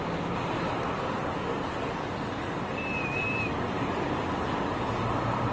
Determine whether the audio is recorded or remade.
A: recorded